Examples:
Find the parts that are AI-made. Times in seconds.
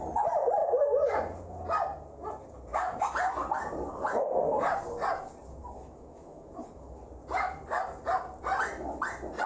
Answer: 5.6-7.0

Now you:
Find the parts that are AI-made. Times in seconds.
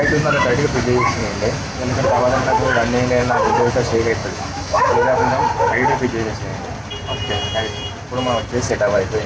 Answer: 1.2-2.0; 4.2-5.4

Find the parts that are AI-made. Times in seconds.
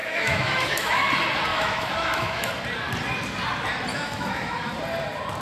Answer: 0.0-1.1; 1.5-2.5; 3.9-4.7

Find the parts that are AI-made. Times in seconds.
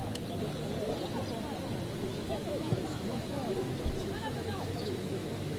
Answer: 2.1-5.6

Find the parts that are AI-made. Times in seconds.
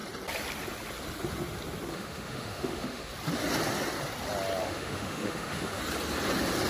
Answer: 1.9-3.1; 4.6-5.8